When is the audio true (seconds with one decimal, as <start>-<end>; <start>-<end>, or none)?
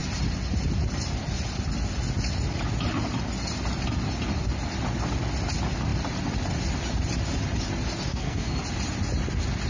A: 0.0-8.1; 8.6-9.7